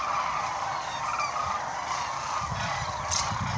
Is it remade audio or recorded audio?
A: recorded